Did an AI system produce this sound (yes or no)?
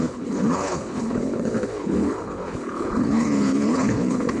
yes